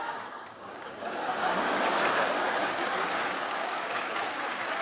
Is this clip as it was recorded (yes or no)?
no